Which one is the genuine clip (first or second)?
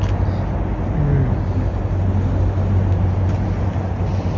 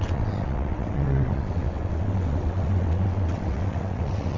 first